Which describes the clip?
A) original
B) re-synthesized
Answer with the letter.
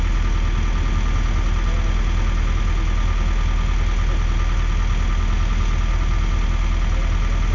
A